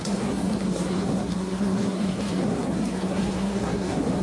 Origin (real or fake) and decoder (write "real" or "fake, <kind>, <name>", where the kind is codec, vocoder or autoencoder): fake, codec, SNAC